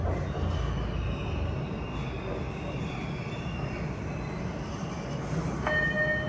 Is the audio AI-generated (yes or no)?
no